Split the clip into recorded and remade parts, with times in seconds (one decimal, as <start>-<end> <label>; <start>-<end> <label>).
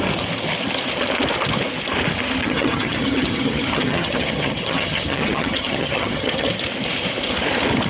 0.0-2.4 recorded; 2.4-6.5 remade; 6.5-7.9 recorded